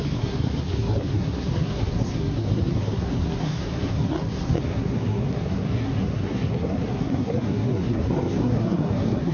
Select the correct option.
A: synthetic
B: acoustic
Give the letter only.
A